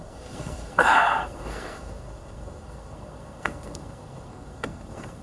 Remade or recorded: remade